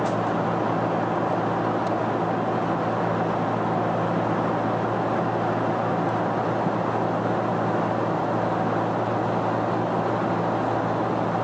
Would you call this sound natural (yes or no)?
yes